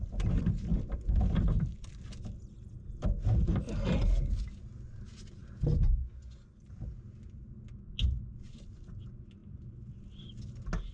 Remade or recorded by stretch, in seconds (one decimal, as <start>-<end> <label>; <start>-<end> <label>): 0.0-0.7 recorded; 0.7-3.7 remade; 3.7-5.4 recorded; 5.4-6.8 remade; 6.8-10.9 recorded